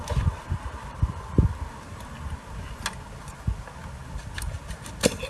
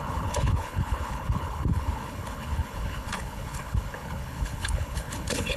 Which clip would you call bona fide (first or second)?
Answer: first